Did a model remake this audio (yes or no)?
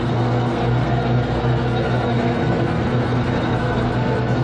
yes